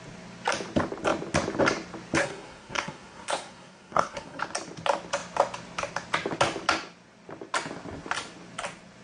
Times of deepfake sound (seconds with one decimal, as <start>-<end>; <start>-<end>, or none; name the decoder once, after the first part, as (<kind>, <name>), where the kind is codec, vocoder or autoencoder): 2.2-4.4 (codec, SNAC)